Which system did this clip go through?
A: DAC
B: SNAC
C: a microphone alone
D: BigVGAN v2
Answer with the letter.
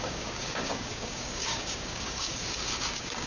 A